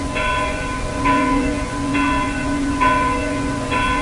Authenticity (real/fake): fake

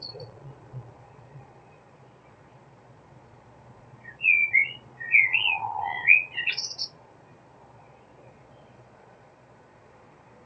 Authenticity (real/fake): fake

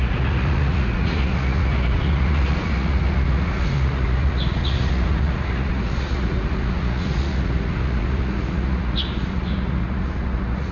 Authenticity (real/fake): fake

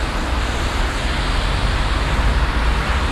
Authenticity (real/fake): real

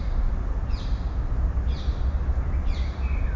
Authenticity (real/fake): real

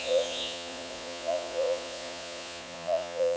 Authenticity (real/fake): fake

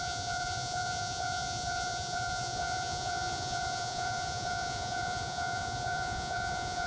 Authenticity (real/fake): fake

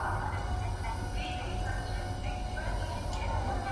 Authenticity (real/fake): real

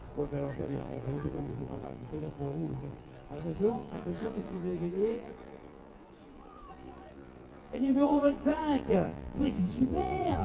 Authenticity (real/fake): fake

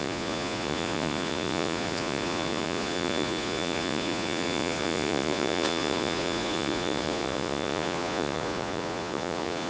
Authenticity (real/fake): fake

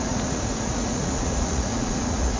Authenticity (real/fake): fake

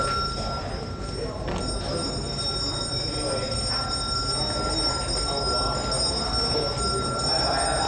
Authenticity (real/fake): real